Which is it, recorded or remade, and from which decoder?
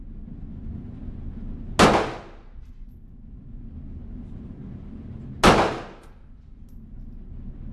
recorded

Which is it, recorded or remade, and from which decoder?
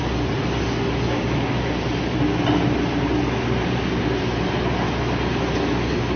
recorded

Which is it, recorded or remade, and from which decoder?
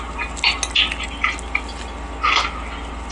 recorded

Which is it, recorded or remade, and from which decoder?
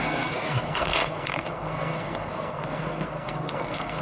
remade, codec, SNAC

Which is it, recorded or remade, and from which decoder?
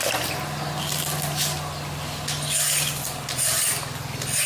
recorded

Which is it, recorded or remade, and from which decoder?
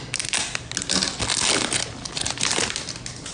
recorded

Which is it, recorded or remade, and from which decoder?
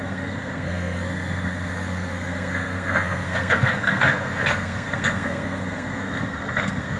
remade, codec, SNAC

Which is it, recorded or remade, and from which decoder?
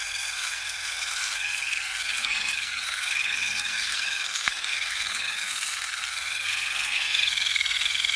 remade, codec, SNAC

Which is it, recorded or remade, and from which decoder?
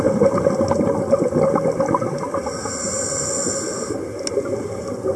recorded